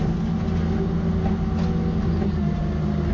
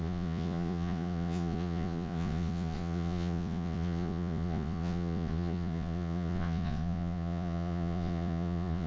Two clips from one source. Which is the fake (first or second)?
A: second